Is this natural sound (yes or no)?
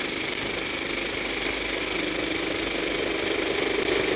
yes